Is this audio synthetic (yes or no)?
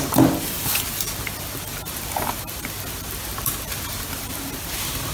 no